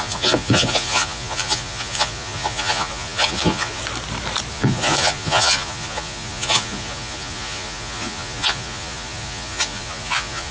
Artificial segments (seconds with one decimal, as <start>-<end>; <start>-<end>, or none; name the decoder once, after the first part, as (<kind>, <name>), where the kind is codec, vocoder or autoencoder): 0.0-3.8 (vocoder, Vocos); 4.5-10.5